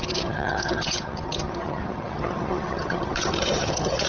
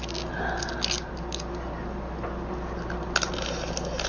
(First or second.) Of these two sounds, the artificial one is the first